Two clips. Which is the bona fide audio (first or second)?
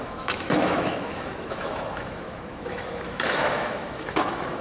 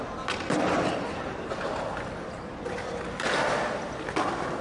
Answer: second